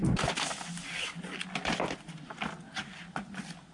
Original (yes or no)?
yes